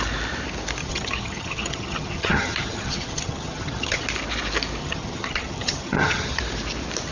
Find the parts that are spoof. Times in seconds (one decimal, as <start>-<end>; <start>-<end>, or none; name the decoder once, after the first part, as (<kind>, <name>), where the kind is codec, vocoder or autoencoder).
0.8-4.0 (vocoder, HiFi-GAN); 4.8-6.4